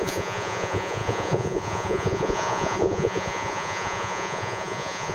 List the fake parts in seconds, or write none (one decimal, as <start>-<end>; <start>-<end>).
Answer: 0.0-5.1